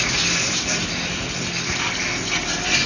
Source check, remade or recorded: recorded